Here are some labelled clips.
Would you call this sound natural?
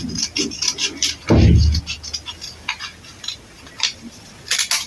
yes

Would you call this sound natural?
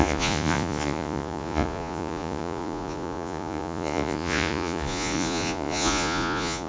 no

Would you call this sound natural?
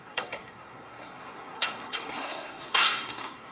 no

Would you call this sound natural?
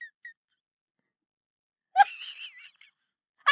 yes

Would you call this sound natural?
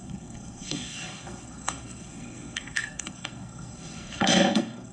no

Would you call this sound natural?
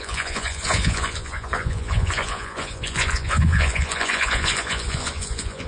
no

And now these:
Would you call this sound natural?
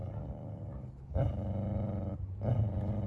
yes